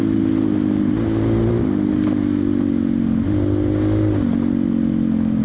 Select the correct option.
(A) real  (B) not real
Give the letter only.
A